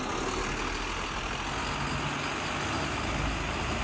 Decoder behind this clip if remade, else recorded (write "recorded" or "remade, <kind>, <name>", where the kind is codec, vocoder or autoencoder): recorded